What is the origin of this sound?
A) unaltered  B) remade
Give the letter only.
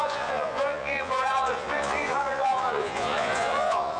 B